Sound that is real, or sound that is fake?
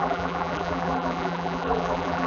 fake